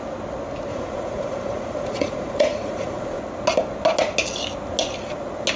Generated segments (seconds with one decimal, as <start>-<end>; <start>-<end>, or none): 0.7-3.2